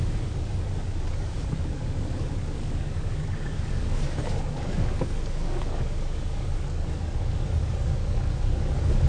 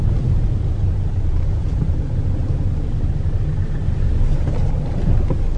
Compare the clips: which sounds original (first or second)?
second